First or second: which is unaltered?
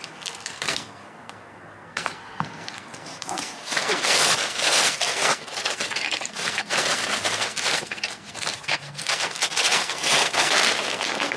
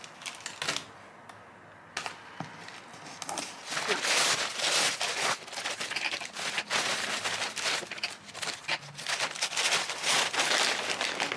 second